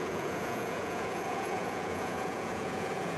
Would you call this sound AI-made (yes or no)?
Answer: yes